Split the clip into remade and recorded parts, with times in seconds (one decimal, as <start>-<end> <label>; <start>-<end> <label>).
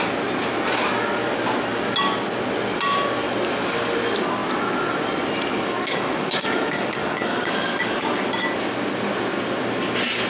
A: 0.0-5.5 recorded; 5.5-8.3 remade; 8.3-10.3 recorded